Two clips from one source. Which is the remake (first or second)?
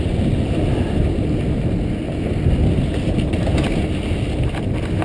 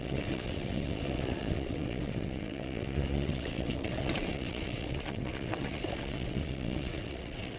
second